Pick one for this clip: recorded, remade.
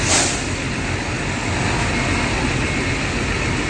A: recorded